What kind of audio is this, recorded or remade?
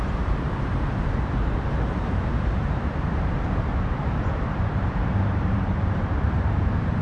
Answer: remade